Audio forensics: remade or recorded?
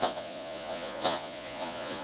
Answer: remade